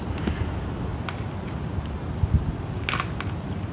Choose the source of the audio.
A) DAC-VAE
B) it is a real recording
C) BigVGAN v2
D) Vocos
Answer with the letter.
B